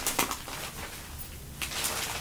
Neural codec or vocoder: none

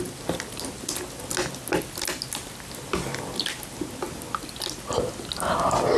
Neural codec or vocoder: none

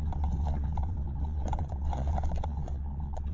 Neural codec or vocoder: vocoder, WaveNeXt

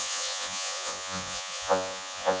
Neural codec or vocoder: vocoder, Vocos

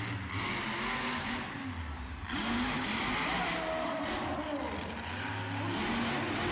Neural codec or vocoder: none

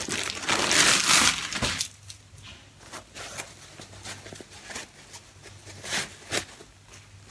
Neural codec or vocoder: none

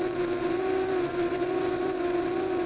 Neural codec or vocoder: vocoder, Vocos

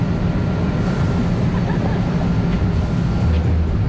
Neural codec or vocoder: none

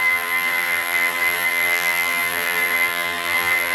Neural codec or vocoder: vocoder, BigVGAN v2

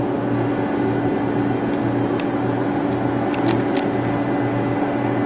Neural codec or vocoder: none